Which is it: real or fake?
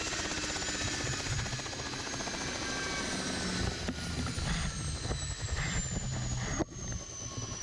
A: real